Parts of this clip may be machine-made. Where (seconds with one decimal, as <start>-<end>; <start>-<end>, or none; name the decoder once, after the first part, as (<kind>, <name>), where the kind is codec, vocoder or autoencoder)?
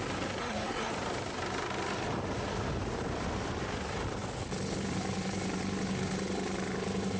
0.4-0.9 (codec, SNAC)